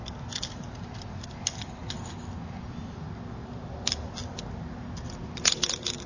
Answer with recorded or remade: recorded